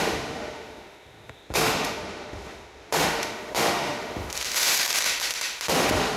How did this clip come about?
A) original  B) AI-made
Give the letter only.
B